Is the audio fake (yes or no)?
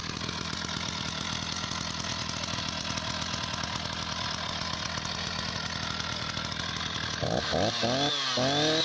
no